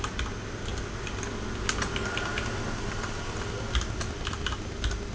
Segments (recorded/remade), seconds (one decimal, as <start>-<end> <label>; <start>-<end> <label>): 0.0-5.1 recorded